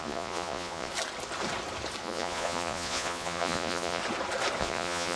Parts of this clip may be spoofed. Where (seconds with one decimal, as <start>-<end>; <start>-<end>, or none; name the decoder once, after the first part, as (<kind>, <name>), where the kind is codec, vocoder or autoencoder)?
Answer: 0.0-0.9 (vocoder, Vocos); 2.0-4.0; 4.6-5.2